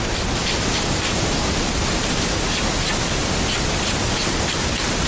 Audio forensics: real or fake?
real